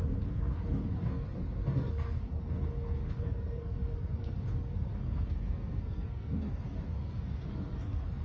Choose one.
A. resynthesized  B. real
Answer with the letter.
A